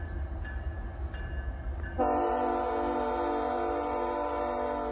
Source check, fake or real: real